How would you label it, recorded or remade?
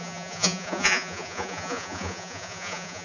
remade